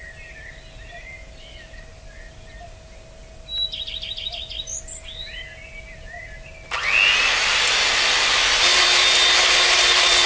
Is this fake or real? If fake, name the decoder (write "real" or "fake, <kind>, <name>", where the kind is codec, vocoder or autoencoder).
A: real